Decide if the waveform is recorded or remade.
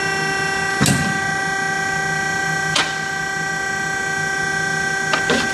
recorded